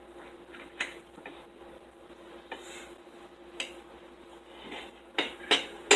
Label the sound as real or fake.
real